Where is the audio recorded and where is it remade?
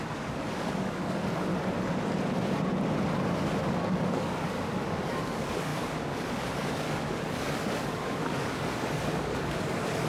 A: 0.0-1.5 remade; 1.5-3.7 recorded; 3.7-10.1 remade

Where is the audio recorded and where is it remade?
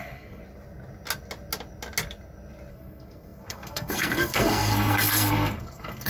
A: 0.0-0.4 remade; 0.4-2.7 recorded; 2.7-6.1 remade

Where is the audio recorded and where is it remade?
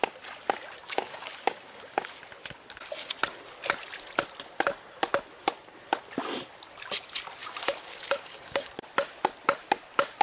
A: 0.0-0.8 recorded; 0.8-2.1 remade; 2.1-7.4 recorded; 7.4-8.7 remade; 8.7-10.2 recorded